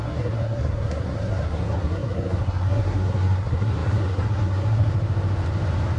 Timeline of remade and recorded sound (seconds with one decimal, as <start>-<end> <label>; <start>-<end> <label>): 0.0-4.9 remade; 4.9-6.0 recorded